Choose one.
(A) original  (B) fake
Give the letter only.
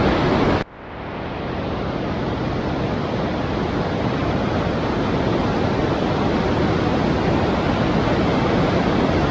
A